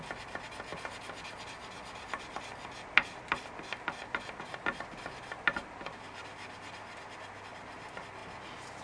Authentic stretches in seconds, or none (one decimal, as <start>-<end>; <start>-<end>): 0.0-8.8